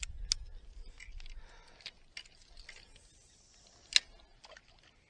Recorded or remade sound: recorded